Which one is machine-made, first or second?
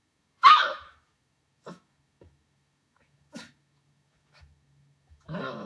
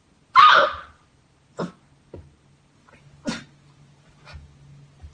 first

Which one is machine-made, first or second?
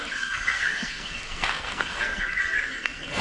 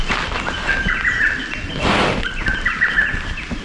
first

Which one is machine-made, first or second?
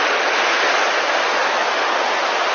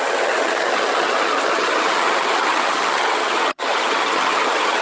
second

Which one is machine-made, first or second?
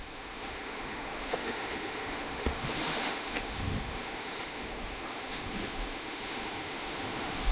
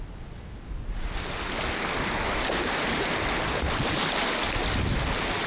first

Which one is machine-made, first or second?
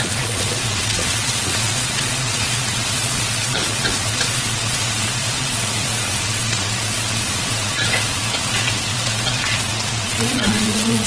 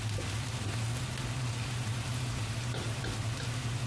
first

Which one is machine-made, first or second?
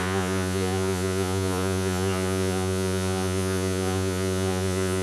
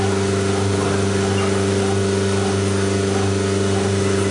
first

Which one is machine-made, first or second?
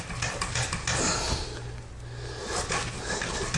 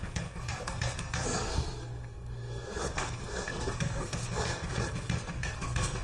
second